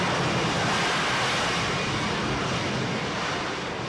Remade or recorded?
recorded